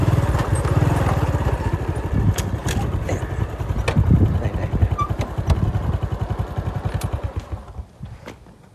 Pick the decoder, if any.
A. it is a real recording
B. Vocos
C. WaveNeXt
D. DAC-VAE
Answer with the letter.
A